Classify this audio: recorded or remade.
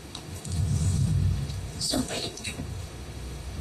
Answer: remade